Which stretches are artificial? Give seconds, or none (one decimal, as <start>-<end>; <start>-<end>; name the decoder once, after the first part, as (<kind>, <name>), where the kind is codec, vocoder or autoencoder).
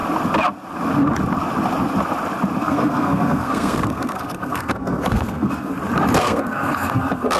2.6-5.7 (codec, SNAC); 6.2-7.4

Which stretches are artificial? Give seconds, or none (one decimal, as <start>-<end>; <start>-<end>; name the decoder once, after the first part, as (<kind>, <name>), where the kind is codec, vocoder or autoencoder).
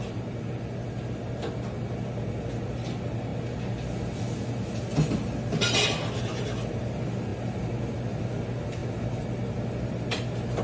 none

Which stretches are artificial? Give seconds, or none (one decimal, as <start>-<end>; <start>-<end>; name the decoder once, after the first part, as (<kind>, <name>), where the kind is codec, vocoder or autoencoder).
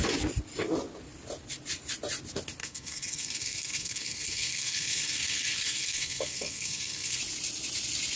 2.6-7.2 (codec, SNAC)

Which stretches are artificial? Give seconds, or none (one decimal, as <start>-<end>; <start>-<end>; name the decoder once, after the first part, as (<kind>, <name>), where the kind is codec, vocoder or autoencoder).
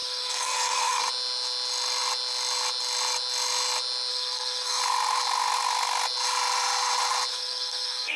0.0-1.0 (codec, SNAC); 4.1-4.8; 7.3-8.2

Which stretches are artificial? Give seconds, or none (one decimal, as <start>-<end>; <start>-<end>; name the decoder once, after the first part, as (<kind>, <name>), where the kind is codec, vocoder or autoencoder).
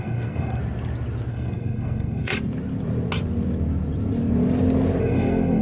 0.0-0.6 (codec, SNAC); 1.3-2.3; 5.0-5.6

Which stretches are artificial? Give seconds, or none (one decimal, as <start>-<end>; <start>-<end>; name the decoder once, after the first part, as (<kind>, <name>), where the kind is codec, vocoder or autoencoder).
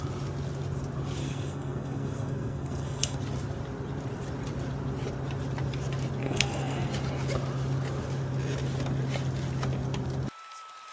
1.2-3.2 (codec, SNAC); 6.2-6.9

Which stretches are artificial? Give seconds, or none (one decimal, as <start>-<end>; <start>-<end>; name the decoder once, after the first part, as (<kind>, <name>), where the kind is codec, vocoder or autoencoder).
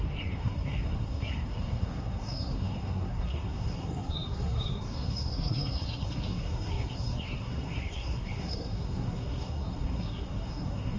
0.0-11.0 (codec, SNAC)